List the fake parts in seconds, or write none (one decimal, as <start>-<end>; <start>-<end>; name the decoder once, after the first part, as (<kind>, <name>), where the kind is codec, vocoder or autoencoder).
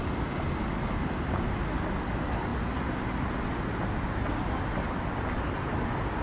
none